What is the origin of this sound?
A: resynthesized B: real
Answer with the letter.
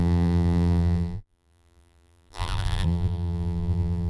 A